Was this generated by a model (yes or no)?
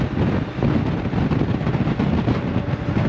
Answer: no